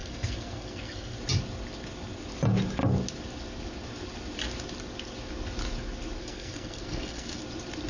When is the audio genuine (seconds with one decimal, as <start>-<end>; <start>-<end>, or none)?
1.2-6.2; 7.4-7.9